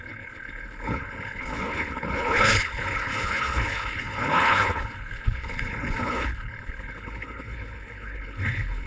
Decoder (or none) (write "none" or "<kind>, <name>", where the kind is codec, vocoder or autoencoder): codec, HILCodec